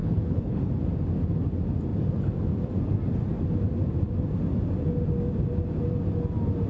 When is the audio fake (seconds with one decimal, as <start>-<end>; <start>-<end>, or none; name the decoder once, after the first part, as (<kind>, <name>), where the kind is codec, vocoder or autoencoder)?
0.0-0.7 (codec, HILCodec)